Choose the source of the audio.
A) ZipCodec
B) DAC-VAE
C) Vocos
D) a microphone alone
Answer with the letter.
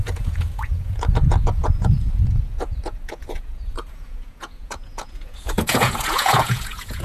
C